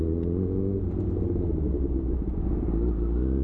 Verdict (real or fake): real